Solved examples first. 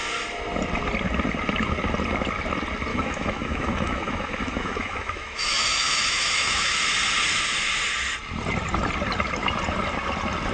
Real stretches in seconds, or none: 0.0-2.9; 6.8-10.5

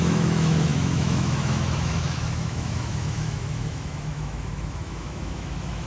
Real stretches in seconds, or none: none

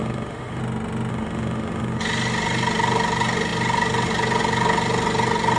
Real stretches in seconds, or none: 0.6-1.1; 2.0-5.6

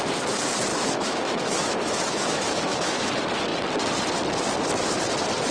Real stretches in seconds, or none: 0.0-0.7; 3.1-5.5